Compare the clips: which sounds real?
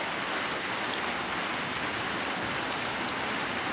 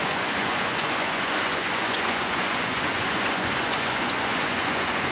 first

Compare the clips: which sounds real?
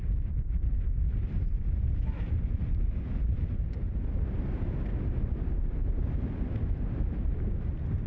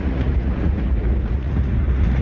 first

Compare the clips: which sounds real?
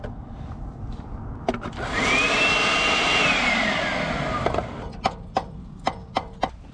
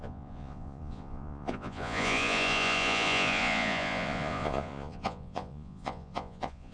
first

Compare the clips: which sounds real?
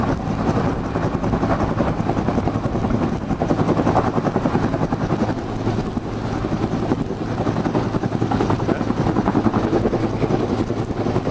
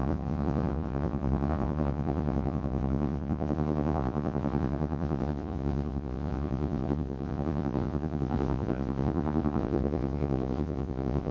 first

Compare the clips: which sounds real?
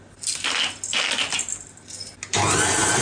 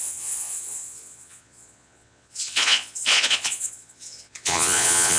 first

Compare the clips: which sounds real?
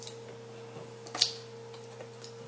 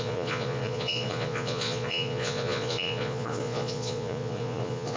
first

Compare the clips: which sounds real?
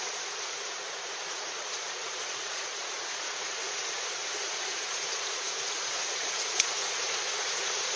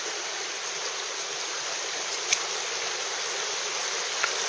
second